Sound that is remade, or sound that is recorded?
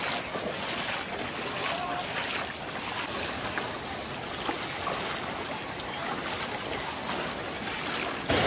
recorded